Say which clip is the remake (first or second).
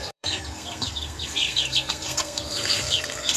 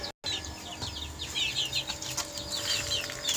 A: first